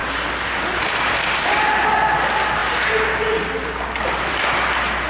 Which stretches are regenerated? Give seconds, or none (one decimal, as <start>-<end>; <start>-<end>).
none